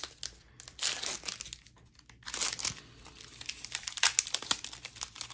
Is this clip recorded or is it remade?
recorded